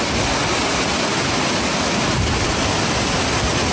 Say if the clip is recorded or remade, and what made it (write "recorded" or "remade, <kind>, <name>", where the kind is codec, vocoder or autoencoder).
recorded